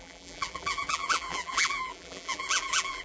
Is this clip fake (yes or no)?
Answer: yes